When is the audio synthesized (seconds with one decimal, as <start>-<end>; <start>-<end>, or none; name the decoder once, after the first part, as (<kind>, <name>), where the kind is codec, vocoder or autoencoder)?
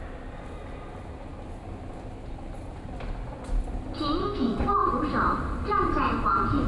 4.2-4.9 (codec, SNAC)